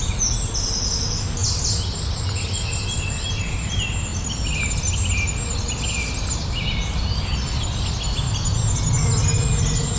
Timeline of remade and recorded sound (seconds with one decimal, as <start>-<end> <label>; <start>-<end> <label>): 0.0-10.0 recorded